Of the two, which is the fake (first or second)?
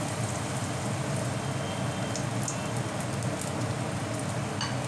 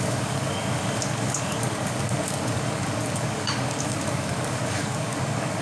second